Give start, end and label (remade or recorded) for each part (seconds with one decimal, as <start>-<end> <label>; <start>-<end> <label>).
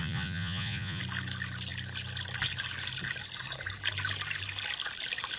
0.0-1.0 remade; 1.0-5.4 recorded